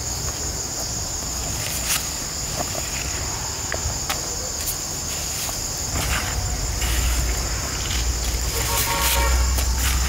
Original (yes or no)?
yes